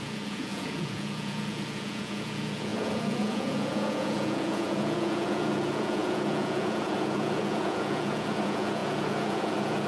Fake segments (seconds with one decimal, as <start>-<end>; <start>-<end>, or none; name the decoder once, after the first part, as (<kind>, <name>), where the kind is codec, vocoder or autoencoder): 0.0-9.9 (vocoder, Vocos)